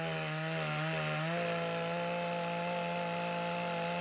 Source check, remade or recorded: recorded